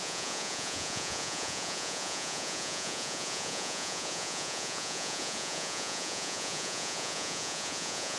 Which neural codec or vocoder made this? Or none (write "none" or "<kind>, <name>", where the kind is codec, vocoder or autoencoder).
vocoder, Vocos